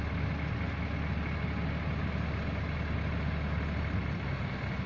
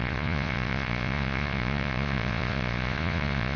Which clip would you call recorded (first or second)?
first